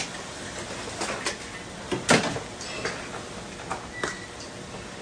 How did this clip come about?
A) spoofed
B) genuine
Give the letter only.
B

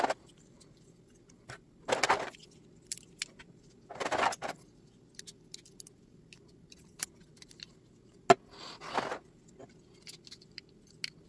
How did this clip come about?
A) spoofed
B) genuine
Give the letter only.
B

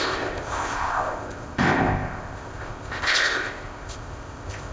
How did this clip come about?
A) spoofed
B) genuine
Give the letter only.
A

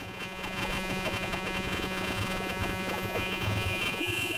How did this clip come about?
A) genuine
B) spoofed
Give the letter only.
B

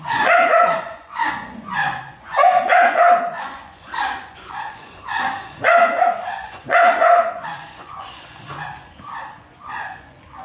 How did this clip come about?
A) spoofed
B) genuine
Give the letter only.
A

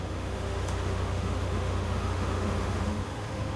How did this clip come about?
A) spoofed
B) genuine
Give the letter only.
A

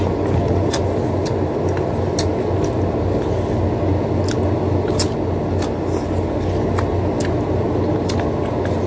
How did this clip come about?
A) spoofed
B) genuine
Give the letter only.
B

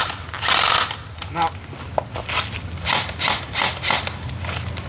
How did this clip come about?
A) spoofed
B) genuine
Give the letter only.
B